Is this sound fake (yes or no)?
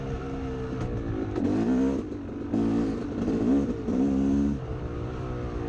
no